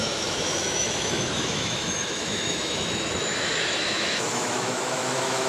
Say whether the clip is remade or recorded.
remade